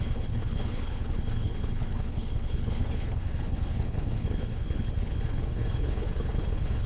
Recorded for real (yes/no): no